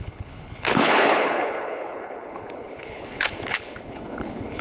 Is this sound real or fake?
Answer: fake